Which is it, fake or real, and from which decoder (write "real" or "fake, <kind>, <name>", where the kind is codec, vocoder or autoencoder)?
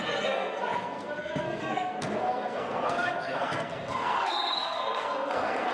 fake, codec, SNAC